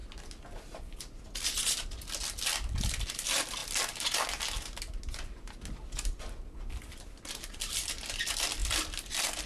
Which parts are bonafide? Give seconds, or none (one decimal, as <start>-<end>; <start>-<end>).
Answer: 0.0-9.5